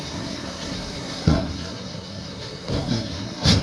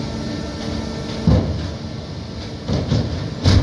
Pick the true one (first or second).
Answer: second